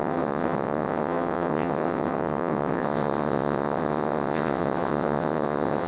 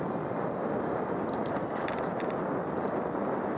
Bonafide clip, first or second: second